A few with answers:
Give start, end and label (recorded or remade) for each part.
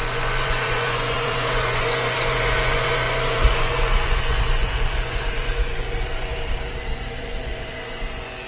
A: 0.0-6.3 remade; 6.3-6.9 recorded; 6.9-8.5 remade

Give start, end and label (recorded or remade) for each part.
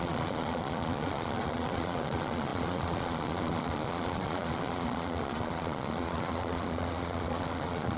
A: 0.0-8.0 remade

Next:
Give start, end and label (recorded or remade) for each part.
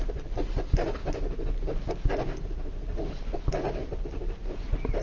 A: 0.0-5.0 recorded